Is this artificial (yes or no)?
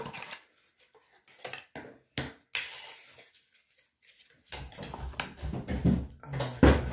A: no